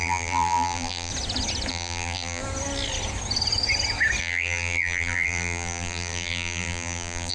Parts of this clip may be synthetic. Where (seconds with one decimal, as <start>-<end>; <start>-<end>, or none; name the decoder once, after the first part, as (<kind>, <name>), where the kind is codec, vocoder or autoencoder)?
0.0-1.1 (vocoder, BigVGAN v2); 1.7-2.4; 4.2-7.3